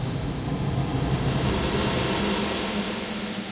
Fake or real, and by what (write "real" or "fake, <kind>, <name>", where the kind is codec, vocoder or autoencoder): real